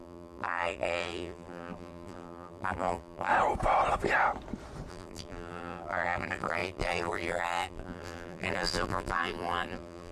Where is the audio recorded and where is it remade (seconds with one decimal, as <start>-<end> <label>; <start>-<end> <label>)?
0.0-3.3 remade; 3.3-4.9 recorded; 4.9-10.1 remade